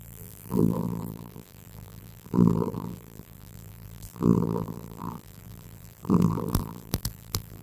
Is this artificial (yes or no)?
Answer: yes